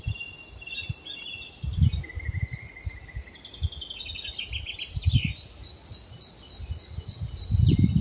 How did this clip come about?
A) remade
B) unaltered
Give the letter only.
B